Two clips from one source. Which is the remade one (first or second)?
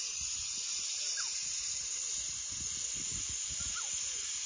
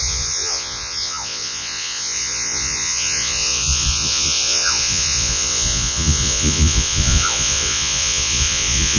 second